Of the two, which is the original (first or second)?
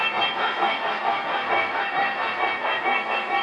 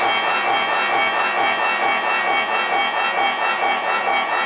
second